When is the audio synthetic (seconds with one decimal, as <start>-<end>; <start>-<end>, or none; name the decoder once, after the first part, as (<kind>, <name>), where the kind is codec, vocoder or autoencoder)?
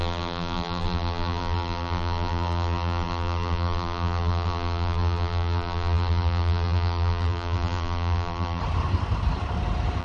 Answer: 0.0-8.6 (vocoder, BigVGAN v2)